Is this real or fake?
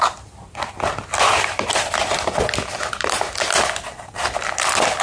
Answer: real